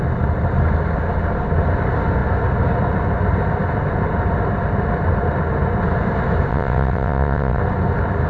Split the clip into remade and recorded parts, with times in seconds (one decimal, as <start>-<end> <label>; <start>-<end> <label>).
0.0-6.5 recorded; 6.5-7.6 remade; 7.6-8.3 recorded